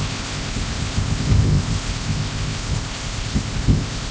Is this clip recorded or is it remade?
remade